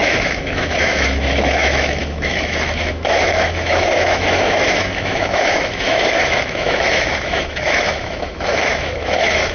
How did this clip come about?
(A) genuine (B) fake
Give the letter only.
B